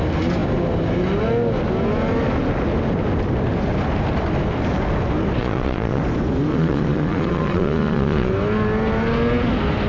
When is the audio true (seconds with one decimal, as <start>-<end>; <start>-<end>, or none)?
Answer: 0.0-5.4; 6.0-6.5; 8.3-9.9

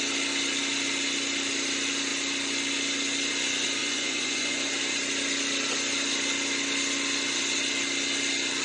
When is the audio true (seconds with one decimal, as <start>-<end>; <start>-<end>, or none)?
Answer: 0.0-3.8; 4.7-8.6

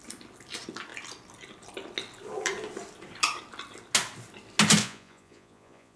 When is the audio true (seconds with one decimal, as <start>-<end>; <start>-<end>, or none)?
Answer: 0.0-4.8

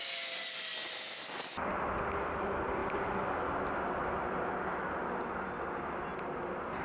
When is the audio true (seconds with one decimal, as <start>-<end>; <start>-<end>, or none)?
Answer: 0.0-6.8

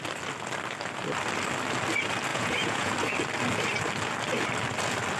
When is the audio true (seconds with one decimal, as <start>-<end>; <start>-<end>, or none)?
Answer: 0.0-2.3; 2.9-5.2